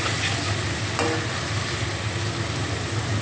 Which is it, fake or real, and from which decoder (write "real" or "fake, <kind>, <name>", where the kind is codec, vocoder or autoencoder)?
real